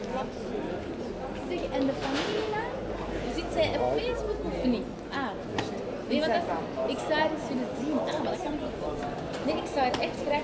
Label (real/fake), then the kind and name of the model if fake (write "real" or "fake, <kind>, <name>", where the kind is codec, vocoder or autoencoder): real